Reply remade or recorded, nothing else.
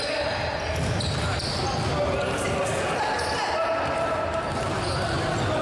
recorded